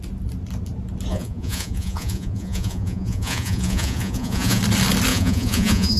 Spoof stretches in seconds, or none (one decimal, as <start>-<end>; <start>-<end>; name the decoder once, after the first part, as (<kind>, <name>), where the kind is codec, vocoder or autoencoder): 1.1-4.6 (vocoder, Vocos); 5.1-6.0